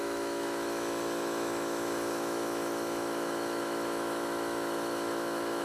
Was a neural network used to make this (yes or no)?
yes